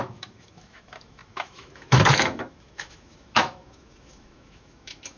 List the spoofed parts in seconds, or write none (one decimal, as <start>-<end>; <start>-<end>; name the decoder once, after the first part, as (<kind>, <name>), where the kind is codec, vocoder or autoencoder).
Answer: 0.0-5.2 (autoencoder, DAC-VAE)